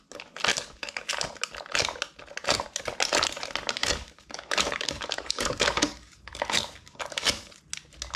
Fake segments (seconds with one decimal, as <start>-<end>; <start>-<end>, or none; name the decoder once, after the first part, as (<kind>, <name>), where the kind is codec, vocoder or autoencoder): 0.5-1.1 (codec, DAC); 3.8-7.5